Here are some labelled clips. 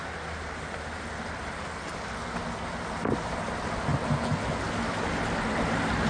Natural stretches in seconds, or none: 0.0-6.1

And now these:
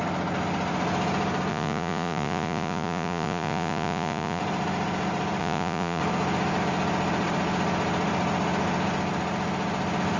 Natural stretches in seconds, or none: 0.0-1.5; 4.4-5.4; 6.0-10.2